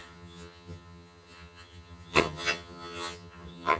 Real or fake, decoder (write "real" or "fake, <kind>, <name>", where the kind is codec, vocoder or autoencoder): fake, vocoder, HiFi-GAN